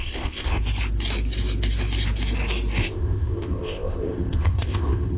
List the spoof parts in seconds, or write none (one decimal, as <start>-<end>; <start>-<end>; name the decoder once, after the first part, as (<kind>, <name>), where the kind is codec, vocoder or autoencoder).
0.0-0.6 (codec, ZipCodec); 2.8-5.2